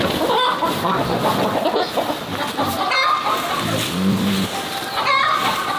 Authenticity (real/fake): real